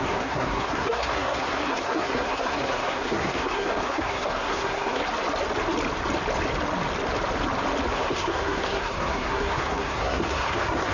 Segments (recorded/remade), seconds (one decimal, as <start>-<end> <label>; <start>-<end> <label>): 0.0-5.0 remade; 5.0-7.9 recorded; 7.9-10.9 remade